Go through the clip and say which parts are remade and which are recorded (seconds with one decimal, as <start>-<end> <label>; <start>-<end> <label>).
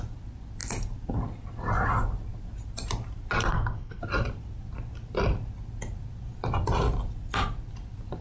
0.0-3.5 recorded; 3.5-4.0 remade; 4.0-8.2 recorded